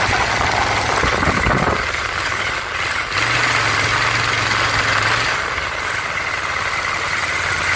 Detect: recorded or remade recorded